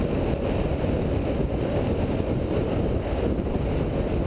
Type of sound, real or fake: real